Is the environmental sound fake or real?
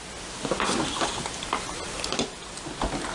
real